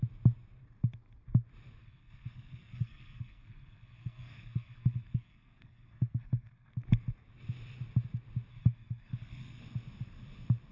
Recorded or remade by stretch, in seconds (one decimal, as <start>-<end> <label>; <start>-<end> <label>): 0.0-1.8 recorded; 1.8-6.7 remade; 6.7-8.5 recorded; 8.5-9.6 remade; 9.6-10.7 recorded